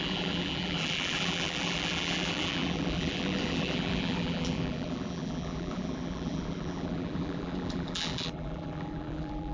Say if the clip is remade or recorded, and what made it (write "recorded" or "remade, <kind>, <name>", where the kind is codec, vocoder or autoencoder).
remade, vocoder, BigVGAN v2